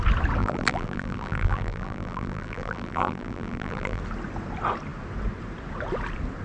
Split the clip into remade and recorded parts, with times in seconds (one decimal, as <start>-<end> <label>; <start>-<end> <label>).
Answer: 0.0-0.4 recorded; 0.4-4.0 remade; 4.0-6.4 recorded